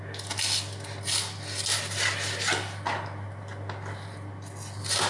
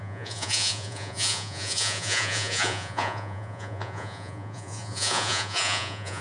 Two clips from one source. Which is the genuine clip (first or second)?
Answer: first